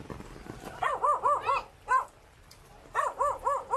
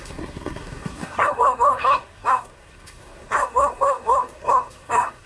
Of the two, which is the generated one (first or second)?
second